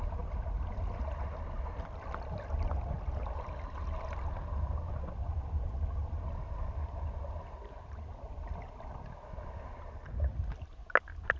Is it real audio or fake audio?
real